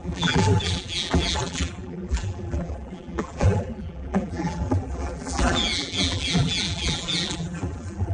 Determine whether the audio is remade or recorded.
remade